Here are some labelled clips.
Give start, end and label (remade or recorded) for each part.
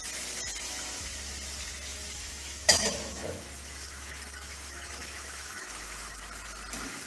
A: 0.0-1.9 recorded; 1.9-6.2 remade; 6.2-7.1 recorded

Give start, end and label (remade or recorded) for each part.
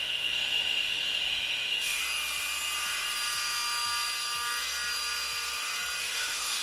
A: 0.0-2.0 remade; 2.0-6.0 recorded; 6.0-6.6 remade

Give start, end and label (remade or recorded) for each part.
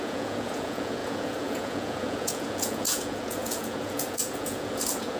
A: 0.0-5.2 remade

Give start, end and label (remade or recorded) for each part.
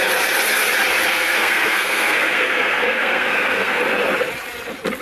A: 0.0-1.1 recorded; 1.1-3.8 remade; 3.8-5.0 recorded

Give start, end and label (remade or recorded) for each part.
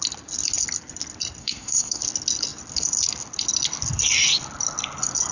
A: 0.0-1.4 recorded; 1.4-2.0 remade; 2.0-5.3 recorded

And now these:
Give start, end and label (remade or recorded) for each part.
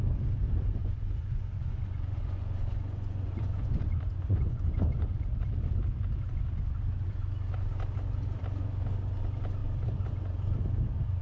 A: 0.0-0.8 recorded; 0.8-5.1 remade; 5.1-11.2 recorded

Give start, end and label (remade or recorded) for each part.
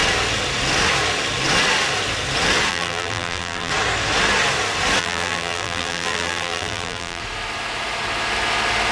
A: 0.0-2.7 recorded; 2.7-3.7 remade; 3.7-5.0 recorded; 5.0-7.2 remade; 7.2-8.9 recorded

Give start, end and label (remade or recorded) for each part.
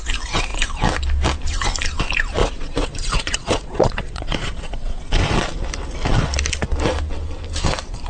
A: 0.0-2.4 recorded; 2.4-5.1 remade; 5.1-8.1 recorded